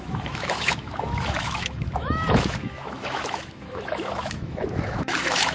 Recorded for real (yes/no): no